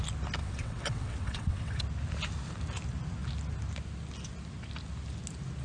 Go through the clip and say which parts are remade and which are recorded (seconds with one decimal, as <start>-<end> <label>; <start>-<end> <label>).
0.0-0.4 recorded; 0.4-1.8 remade; 1.8-5.6 recorded